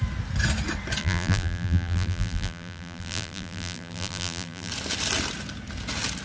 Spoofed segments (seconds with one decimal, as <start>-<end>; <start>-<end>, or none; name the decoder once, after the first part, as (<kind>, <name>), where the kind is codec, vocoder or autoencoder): 1.0-4.7 (vocoder, BigVGAN v2)